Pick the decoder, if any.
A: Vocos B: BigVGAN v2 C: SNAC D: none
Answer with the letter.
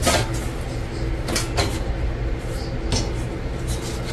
D